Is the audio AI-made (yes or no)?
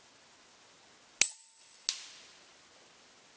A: no